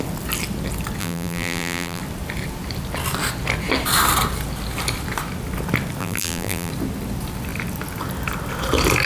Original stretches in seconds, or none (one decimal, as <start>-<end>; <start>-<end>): 0.0-1.0; 2.0-6.0; 6.7-9.1